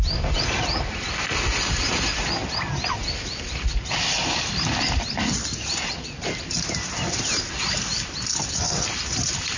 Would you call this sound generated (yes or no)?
no